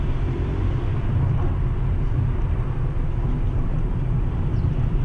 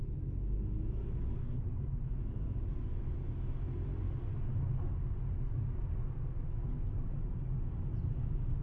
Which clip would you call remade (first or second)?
first